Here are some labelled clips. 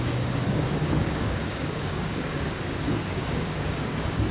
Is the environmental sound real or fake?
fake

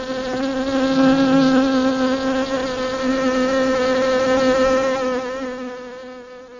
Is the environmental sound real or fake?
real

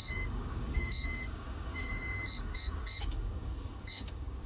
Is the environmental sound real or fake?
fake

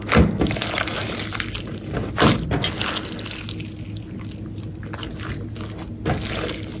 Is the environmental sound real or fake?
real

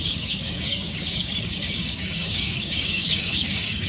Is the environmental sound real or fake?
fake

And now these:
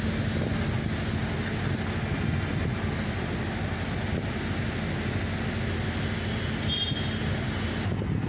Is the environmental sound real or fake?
real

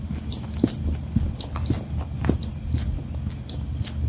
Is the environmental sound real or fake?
real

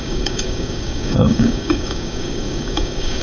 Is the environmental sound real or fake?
fake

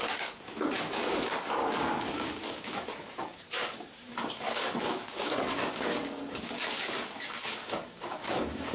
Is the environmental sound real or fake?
fake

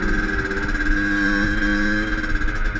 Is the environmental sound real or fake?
real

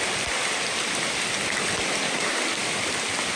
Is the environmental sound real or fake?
real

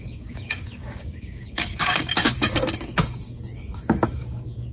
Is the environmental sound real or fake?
fake